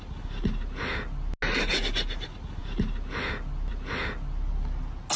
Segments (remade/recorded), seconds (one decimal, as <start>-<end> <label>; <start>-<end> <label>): 0.0-5.2 recorded